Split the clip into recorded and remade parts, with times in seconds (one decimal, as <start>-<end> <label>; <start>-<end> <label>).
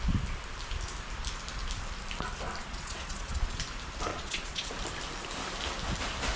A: 0.0-2.6 recorded; 2.6-3.6 remade; 3.6-4.1 recorded; 4.1-4.7 remade; 4.7-6.4 recorded